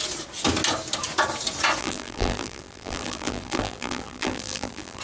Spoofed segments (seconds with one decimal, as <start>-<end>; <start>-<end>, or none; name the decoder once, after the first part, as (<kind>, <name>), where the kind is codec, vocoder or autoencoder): 1.8-5.0 (vocoder, BigVGAN v2)